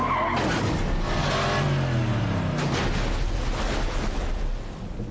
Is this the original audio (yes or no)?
yes